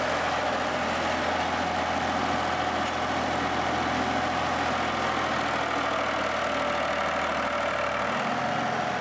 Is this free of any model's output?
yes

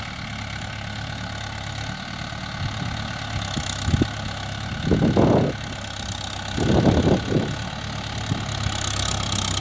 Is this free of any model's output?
yes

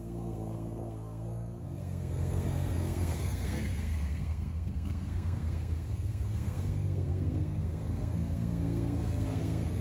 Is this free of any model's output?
no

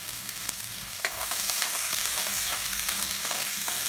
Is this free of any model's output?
no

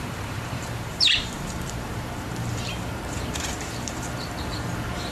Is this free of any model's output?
no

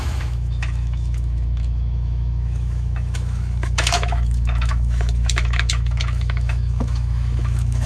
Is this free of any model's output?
no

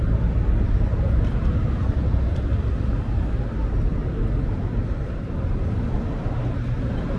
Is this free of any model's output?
yes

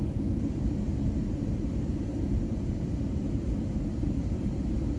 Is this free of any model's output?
no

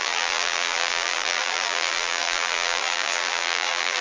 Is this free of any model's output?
no